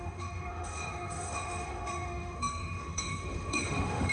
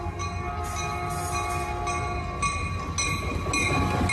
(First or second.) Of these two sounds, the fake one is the first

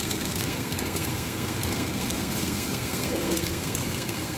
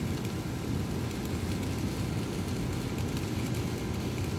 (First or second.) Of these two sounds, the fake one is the first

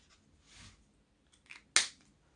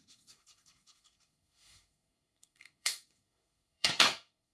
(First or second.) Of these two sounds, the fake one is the second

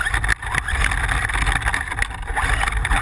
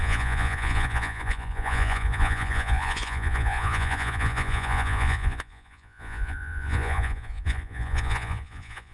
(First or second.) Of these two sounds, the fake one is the second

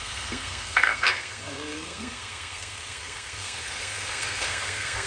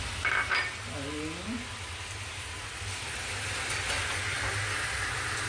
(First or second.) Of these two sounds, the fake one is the first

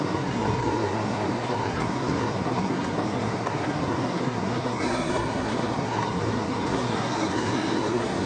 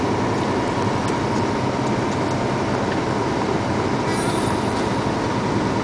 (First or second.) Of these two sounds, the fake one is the first